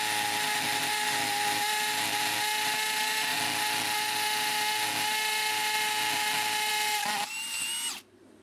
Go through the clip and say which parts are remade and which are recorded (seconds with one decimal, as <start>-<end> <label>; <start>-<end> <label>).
0.0-8.4 recorded